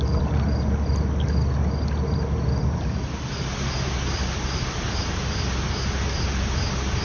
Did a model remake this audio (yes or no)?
no